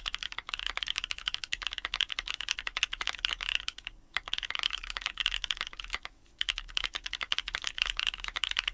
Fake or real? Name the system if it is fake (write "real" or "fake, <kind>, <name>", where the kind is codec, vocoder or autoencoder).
fake, codec, DAC